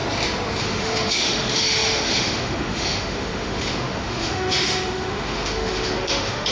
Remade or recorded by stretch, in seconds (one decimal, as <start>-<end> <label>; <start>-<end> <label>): 0.0-0.6 recorded; 0.6-6.5 remade